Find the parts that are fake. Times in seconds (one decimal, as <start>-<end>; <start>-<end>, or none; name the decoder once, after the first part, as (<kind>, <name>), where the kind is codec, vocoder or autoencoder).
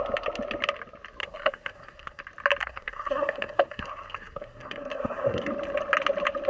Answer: 1.2-2.2 (codec, SNAC); 2.6-5.5